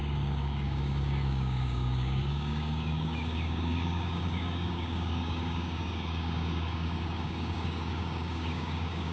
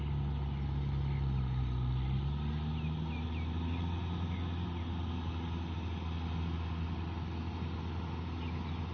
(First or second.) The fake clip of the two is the first